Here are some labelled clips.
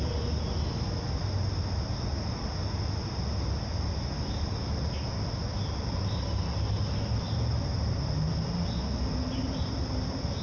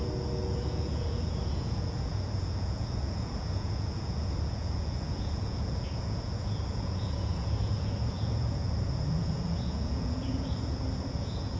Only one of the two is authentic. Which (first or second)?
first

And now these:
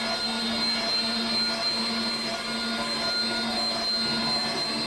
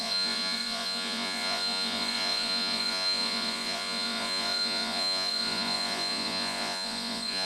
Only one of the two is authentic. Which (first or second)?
first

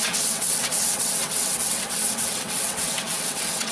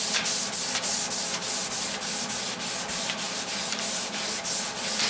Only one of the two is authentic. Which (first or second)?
second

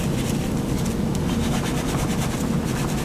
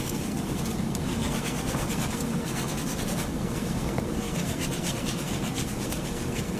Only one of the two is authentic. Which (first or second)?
first